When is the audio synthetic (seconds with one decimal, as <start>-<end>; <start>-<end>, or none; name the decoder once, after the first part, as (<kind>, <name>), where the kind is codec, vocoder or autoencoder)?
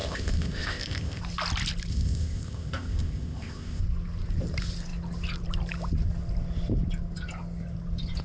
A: 0.0-1.2 (codec, ZipCodec); 1.9-3.8